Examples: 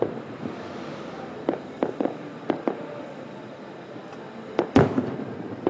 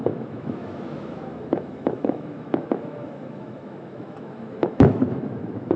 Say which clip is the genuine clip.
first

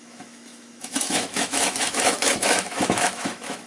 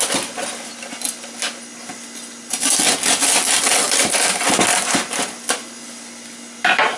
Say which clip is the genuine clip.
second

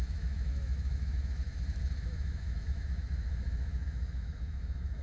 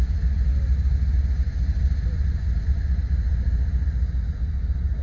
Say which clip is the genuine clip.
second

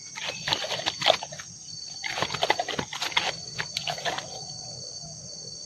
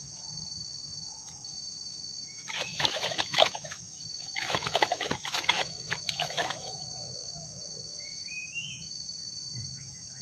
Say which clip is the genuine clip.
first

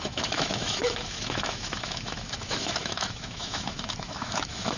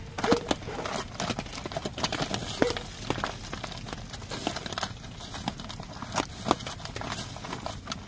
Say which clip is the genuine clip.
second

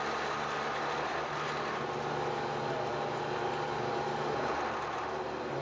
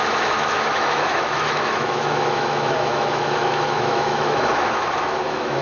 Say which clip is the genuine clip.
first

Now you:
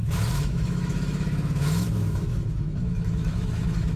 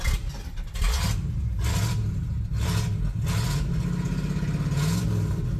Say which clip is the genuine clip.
second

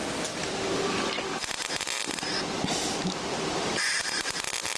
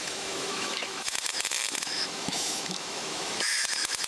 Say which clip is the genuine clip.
first